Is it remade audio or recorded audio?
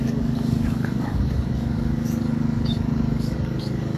remade